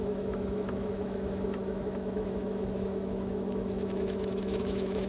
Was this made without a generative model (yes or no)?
no